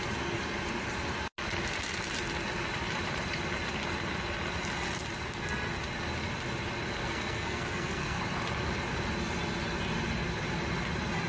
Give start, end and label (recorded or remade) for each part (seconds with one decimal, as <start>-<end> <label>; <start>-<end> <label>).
0.0-7.0 recorded; 7.0-8.2 remade; 8.2-11.3 recorded